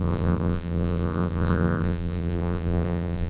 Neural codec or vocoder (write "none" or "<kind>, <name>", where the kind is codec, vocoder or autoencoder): vocoder, BigVGAN v2